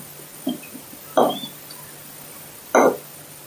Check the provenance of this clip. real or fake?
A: real